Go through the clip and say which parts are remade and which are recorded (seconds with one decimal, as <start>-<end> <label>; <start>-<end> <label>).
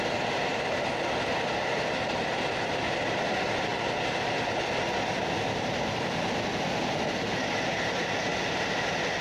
0.0-9.2 recorded